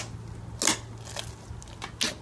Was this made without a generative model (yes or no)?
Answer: yes